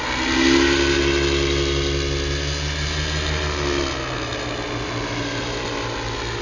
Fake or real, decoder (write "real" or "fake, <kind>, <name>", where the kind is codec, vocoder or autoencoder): real